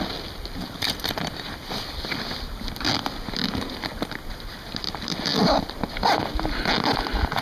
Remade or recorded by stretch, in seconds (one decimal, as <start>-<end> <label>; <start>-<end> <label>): 0.0-7.4 recorded